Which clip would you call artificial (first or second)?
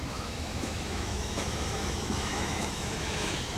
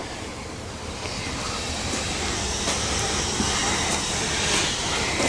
first